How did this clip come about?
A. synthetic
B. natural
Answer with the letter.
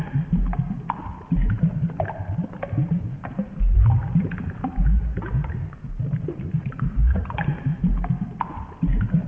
B